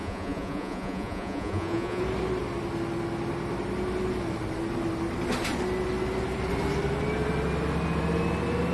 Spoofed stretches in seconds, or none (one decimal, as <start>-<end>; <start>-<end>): 0.0-2.0